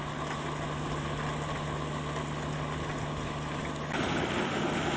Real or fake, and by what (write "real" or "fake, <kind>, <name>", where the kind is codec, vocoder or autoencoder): real